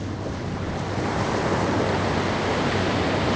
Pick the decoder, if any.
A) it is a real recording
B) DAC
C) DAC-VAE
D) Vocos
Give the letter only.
A